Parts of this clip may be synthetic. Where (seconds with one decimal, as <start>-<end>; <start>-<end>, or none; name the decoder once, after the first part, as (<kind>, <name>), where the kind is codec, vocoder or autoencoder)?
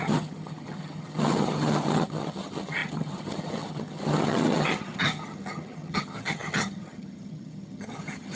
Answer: 0.0-8.4 (vocoder, HiFi-GAN)